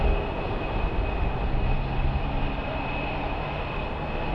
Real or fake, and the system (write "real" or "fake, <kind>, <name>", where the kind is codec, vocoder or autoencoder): real